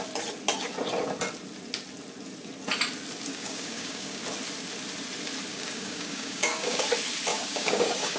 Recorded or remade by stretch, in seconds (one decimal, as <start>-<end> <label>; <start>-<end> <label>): 0.0-3.3 recorded; 3.3-4.2 remade; 4.2-5.5 recorded; 5.5-6.8 remade; 6.8-7.3 recorded; 7.3-8.2 remade